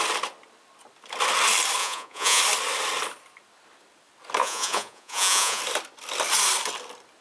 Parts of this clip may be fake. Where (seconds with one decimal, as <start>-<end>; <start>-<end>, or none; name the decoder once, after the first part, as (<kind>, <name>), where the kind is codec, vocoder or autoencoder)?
1.8-2.4 (vocoder, Vocos); 4.4-5.6

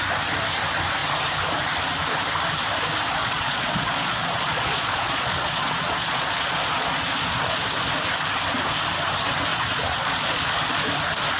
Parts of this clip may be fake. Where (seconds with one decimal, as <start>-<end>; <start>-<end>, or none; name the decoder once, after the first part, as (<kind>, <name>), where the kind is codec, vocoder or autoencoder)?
3.2-7.7 (vocoder, Vocos); 9.5-10.9